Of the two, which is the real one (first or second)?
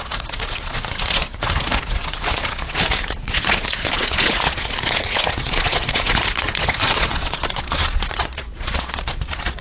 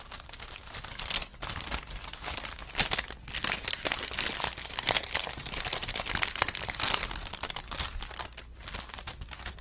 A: second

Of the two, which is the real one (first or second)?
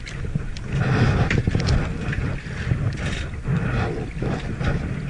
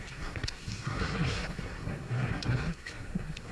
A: first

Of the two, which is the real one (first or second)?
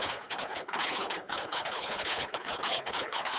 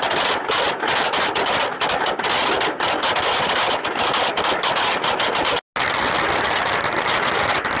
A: second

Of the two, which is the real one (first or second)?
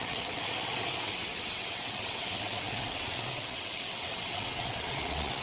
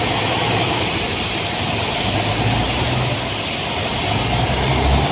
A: second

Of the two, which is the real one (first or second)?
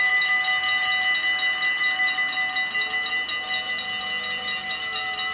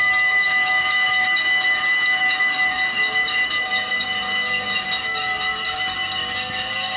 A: first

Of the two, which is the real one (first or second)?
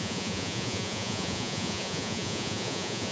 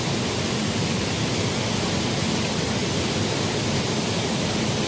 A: second